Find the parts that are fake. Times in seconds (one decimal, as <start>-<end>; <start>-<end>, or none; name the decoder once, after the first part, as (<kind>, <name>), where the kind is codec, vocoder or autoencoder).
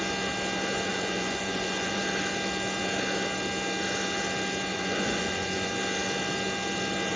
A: 0.9-2.0 (vocoder, Vocos); 4.7-5.7